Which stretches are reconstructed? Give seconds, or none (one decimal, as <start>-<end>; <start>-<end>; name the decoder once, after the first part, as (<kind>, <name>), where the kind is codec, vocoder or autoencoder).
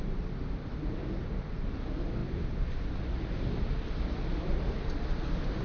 2.2-5.6 (vocoder, BigVGAN v2)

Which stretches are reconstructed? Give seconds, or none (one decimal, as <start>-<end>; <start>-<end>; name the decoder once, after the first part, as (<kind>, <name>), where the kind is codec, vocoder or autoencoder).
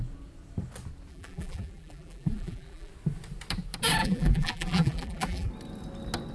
1.1-2.9 (vocoder, BigVGAN v2); 4.0-5.5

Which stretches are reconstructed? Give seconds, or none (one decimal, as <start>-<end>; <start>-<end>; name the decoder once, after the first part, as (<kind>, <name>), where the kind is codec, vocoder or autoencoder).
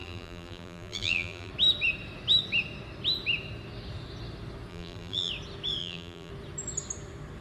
0.0-1.5 (vocoder, BigVGAN v2); 4.7-5.3; 5.8-6.3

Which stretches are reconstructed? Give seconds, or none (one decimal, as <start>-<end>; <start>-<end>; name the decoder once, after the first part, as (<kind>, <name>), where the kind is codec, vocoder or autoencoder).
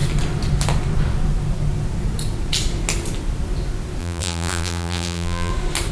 4.0-5.5 (vocoder, BigVGAN v2)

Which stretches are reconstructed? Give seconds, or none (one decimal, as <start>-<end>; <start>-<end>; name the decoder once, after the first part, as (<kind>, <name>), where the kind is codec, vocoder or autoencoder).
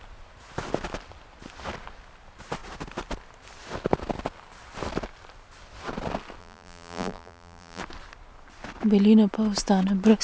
6.4-7.8 (vocoder, BigVGAN v2)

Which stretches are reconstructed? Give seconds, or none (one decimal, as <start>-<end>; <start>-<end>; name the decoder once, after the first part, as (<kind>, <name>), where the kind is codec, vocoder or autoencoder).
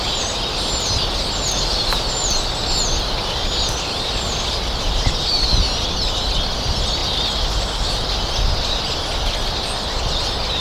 none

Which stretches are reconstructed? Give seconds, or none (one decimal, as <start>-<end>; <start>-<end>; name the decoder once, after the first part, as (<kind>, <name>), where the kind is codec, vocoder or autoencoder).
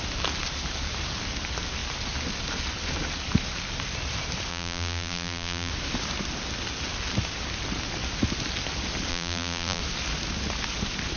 4.5-5.7 (vocoder, BigVGAN v2); 9.1-9.8